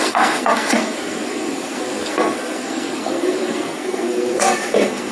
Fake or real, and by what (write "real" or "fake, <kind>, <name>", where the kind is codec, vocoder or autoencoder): fake, codec, SNAC